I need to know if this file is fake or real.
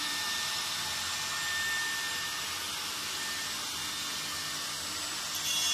real